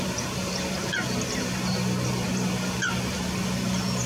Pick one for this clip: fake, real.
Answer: real